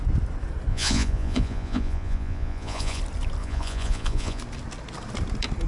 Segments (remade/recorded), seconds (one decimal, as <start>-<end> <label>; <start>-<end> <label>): 0.0-0.7 recorded; 0.7-3.0 remade; 3.0-3.4 recorded; 3.4-4.4 remade; 4.4-5.7 recorded